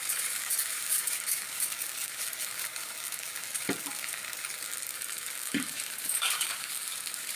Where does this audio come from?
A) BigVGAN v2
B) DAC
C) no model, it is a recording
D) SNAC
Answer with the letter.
B